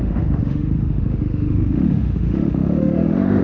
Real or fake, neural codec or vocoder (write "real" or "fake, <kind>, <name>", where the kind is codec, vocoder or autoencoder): fake, autoencoder, DAC-VAE